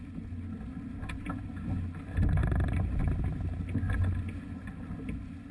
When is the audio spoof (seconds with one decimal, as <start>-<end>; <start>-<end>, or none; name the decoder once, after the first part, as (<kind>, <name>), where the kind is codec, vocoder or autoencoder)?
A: none

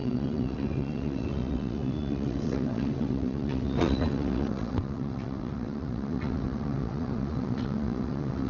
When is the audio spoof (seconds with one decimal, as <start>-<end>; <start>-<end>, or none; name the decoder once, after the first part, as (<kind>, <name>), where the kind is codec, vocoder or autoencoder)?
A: 0.0-8.5 (vocoder, WaveNeXt)